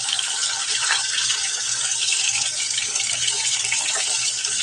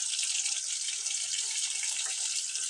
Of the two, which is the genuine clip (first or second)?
second